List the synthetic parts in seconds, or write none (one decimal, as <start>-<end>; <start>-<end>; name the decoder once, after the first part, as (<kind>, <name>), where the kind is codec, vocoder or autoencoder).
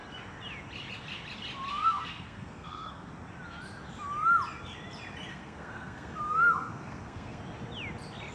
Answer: 1.7-3.1 (codec, SNAC); 5.3-7.4